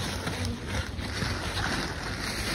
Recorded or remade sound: recorded